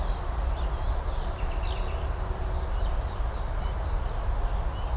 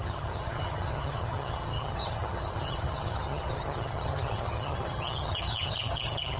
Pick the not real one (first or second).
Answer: second